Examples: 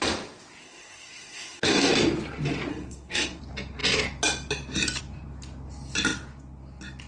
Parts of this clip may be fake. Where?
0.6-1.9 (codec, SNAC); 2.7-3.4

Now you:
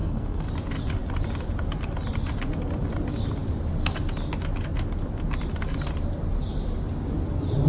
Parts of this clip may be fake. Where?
0.0-0.5 (codec, SNAC)

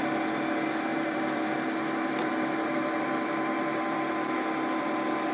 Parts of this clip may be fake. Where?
0.9-4.1 (vocoder, BigVGAN v2)

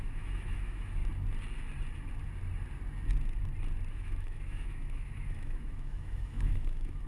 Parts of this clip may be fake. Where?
0.0-1.0 (autoencoder, DAC-VAE); 3.9-7.1

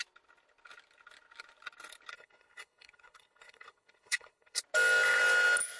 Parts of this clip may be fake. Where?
2.1-4.6 (codec, HILCodec)

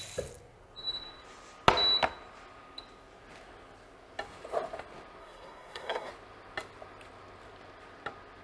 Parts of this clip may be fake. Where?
5.2-6.1 (codec, SNAC)

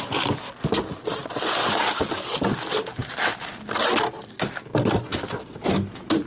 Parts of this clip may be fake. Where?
1.2-1.8 (vocoder, BigVGAN v2); 3.0-3.9